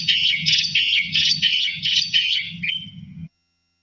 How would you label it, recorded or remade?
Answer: remade